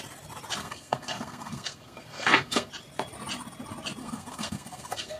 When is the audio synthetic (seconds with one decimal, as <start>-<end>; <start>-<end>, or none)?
0.6-2.7; 4.0-5.2